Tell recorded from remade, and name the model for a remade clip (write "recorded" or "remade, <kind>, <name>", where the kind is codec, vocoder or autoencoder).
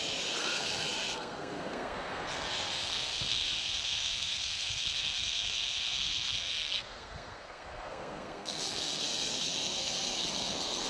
remade, codec, SNAC